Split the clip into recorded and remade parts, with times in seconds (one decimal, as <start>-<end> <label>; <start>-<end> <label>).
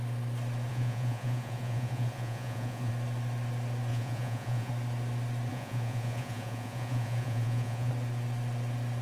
0.0-0.7 recorded; 0.7-2.9 remade; 2.9-3.9 recorded; 3.9-4.7 remade; 4.7-5.5 recorded; 5.5-7.9 remade; 7.9-9.0 recorded